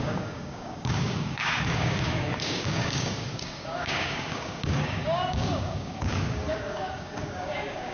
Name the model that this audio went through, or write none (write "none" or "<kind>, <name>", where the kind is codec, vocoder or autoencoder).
codec, DAC